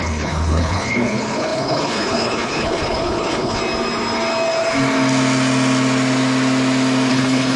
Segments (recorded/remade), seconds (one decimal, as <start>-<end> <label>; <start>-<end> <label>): 0.0-3.6 remade; 3.6-7.1 recorded; 7.1-7.6 remade